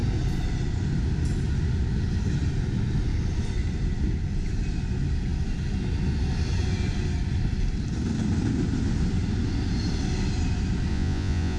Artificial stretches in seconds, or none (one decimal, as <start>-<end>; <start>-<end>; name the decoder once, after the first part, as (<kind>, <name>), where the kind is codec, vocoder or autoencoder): 10.9-11.6 (vocoder, Vocos)